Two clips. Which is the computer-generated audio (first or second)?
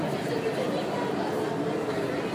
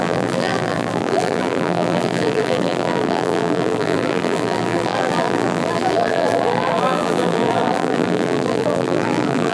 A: second